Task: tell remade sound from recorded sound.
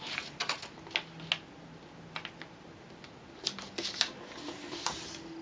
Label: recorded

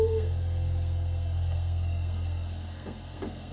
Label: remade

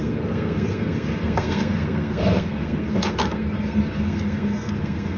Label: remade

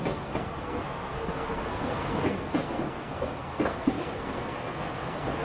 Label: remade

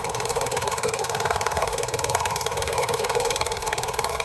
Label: remade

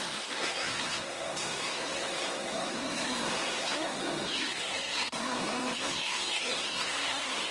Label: remade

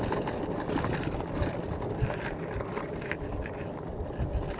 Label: recorded